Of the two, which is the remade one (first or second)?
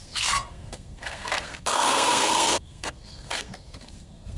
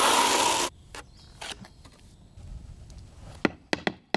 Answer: first